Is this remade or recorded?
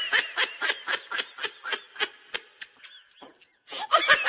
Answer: recorded